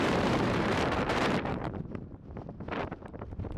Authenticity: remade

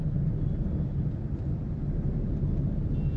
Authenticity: recorded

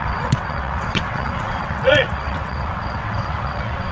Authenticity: remade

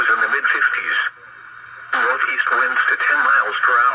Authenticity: recorded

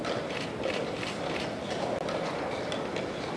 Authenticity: recorded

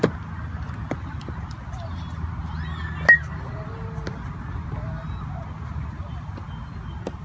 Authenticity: recorded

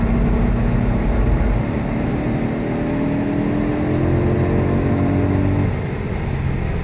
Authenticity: recorded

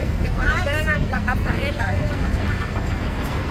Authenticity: remade